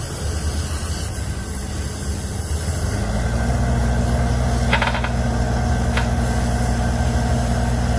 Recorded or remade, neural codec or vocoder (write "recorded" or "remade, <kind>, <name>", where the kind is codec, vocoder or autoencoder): recorded